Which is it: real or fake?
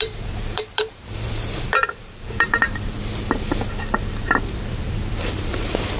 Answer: fake